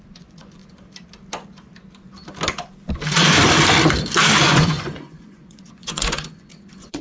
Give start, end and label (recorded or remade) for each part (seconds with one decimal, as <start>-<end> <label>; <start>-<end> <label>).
0.0-0.6 remade; 0.6-4.4 recorded; 4.4-7.0 remade